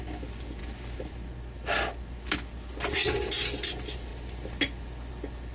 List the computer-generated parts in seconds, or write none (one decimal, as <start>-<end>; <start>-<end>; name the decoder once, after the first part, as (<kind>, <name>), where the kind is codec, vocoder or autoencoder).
none